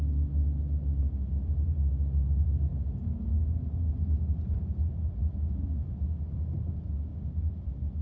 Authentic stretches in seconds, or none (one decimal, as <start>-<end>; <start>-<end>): 0.0-7.1